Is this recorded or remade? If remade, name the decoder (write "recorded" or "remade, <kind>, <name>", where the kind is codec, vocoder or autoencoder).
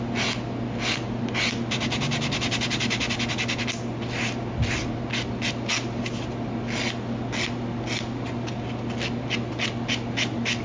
recorded